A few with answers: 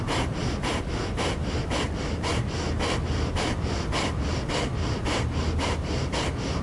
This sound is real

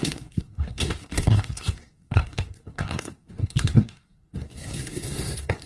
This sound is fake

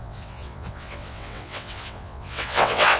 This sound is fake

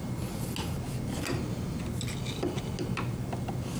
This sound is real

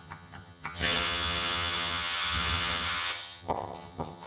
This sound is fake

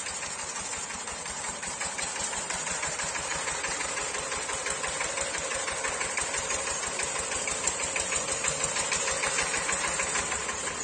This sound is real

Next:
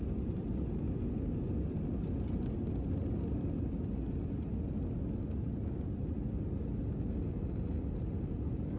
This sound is real